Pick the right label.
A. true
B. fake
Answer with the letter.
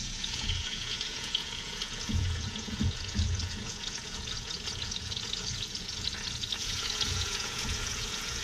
B